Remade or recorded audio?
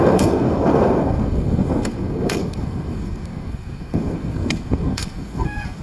remade